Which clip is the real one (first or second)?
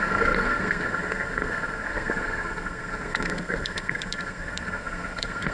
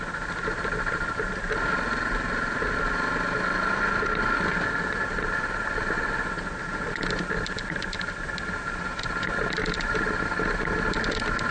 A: second